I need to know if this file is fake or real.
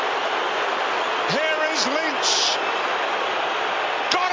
real